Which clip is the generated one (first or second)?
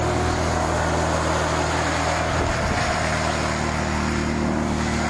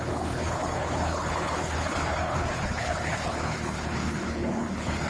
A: second